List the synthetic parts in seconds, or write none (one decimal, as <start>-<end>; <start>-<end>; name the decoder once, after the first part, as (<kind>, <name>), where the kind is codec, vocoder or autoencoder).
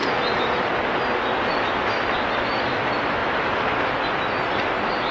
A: none